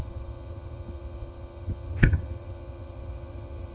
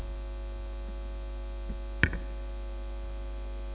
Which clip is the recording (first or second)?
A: second